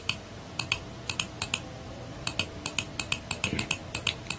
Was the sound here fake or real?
real